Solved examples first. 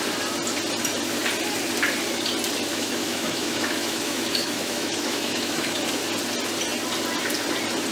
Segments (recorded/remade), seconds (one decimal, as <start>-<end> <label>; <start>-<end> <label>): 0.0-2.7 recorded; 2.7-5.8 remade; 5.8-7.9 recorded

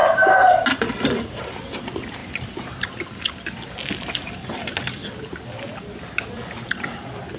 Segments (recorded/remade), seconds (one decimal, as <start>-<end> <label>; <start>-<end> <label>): 0.0-7.4 recorded

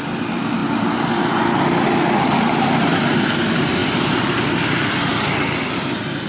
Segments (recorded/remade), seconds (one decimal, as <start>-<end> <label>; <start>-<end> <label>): 0.0-6.3 recorded

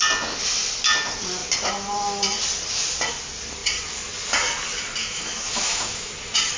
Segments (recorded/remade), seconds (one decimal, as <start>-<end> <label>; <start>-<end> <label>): 0.0-5.0 recorded; 5.0-6.1 remade; 6.1-6.6 recorded

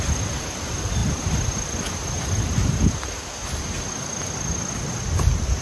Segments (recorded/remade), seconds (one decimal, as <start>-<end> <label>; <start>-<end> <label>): 0.0-5.6 recorded

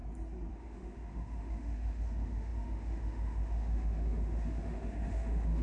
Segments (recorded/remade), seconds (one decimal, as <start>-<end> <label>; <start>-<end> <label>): 0.0-0.5 recorded; 0.5-5.6 remade